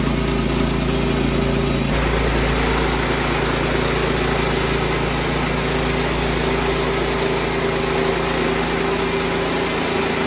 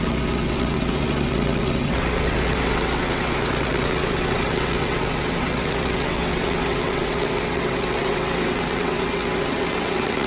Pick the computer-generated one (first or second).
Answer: second